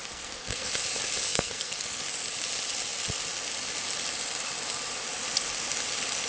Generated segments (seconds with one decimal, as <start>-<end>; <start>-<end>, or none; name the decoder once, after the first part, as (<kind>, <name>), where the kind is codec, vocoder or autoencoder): 0.0-0.7 (codec, SNAC); 1.3-2.0